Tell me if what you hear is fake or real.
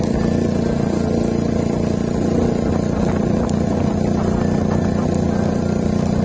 real